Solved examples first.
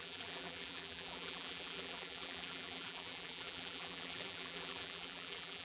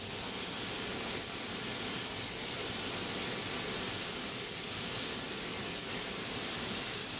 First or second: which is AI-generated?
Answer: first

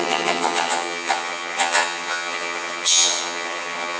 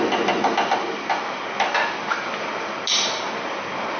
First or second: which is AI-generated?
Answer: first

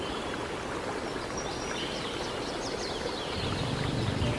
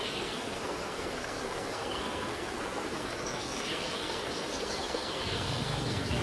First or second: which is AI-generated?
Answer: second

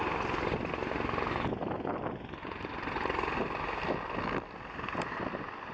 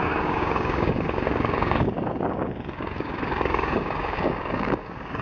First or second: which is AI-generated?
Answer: second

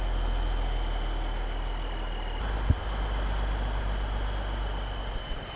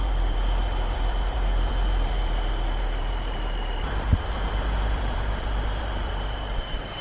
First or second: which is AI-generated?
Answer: second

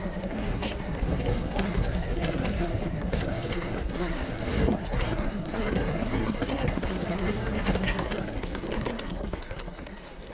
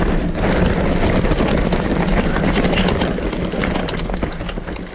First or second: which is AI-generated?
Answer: first